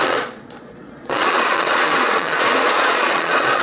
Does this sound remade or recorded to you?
remade